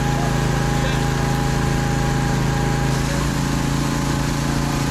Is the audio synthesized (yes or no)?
no